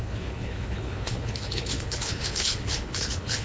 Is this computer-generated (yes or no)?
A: yes